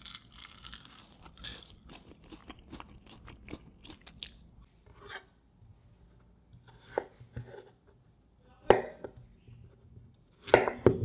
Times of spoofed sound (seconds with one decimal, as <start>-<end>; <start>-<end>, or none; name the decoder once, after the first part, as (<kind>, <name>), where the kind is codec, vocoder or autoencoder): 0.4-1.0 (codec, DAC)